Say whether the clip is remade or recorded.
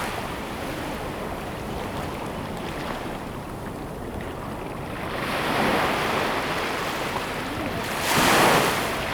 remade